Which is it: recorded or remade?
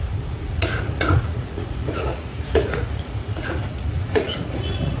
remade